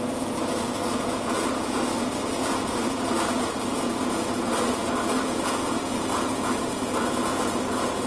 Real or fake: fake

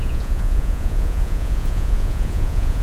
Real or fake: fake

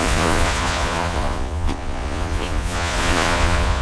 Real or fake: fake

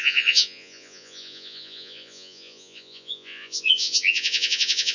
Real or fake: fake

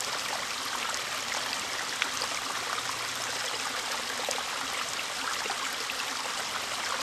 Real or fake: real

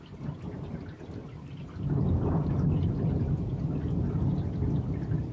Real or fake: real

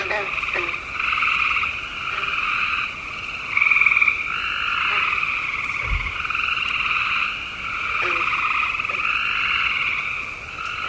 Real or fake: real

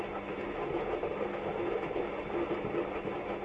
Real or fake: real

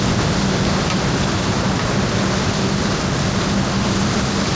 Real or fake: real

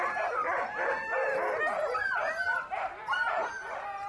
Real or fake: real